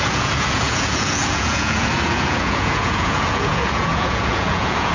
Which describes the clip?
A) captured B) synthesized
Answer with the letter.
B